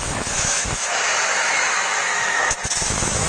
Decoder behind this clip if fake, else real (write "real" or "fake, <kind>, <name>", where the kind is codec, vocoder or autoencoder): fake, autoencoder, DAC-VAE